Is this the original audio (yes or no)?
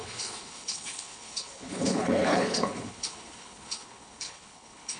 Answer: no